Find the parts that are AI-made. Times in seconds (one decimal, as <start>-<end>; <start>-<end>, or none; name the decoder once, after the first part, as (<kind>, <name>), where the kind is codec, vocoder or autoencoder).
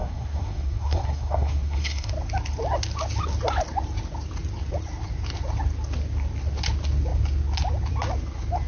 0.0-2.1 (codec, SNAC)